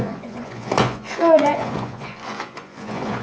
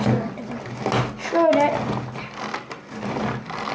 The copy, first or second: first